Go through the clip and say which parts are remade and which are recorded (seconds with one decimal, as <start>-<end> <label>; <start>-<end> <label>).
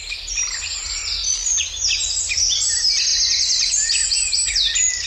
0.0-5.1 recorded